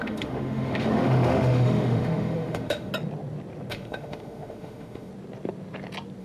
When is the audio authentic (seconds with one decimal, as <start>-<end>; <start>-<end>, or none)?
2.9-3.7; 5.1-6.2